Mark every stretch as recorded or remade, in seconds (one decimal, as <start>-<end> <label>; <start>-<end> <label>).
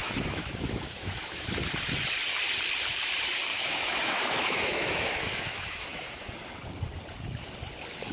0.0-1.5 remade; 1.5-3.5 recorded; 3.5-6.3 remade; 6.3-8.1 recorded